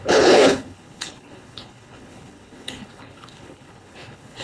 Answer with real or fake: fake